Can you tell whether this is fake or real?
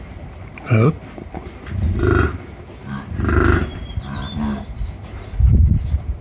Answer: fake